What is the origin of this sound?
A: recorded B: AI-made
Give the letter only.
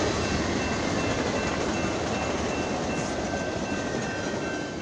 A